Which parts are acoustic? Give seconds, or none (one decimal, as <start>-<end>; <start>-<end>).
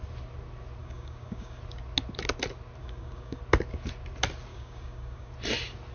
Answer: 0.0-0.8; 1.6-2.8; 3.4-4.5; 5.3-5.9